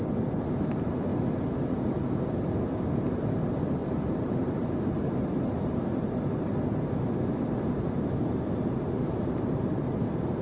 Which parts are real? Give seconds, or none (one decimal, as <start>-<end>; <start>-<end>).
1.1-1.7; 6.5-7.8